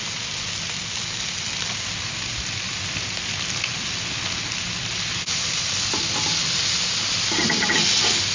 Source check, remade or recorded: recorded